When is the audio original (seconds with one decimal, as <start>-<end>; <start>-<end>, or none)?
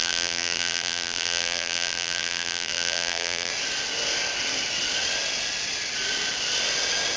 3.5-7.2